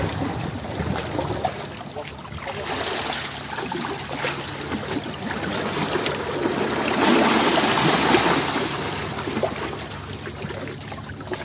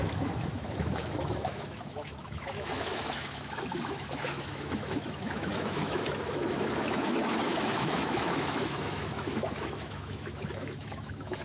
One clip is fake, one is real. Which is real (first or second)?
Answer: first